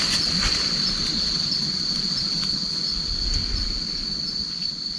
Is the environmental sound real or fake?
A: real